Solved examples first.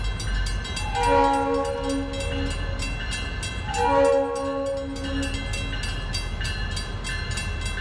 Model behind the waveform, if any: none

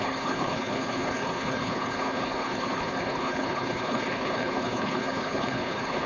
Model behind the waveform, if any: codec, HILCodec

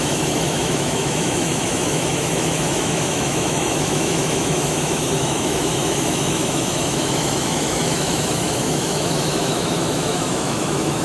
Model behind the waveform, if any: autoencoder, DAC-VAE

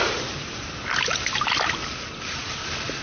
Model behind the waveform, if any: none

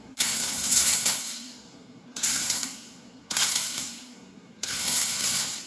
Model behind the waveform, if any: codec, SNAC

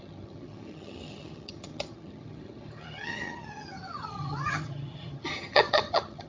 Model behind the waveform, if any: vocoder, HiFi-GAN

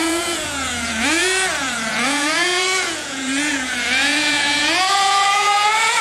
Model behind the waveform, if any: vocoder, Vocos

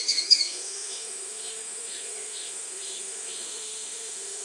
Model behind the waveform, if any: autoencoder, DAC-VAE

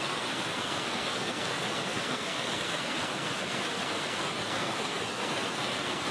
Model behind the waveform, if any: codec, SNAC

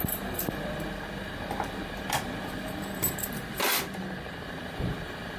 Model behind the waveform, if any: vocoder, BigVGAN v2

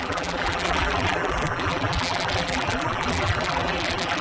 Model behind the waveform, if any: vocoder, BigVGAN v2